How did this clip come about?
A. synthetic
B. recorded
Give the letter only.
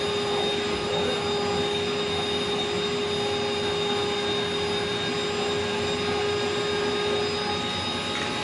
B